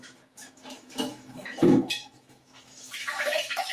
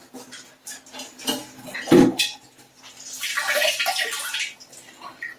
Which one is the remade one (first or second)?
first